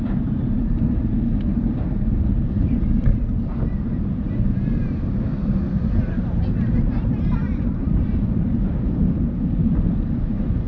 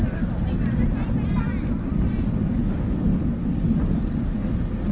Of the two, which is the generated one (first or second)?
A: first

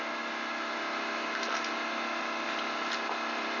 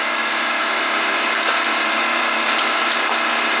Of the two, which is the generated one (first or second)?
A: second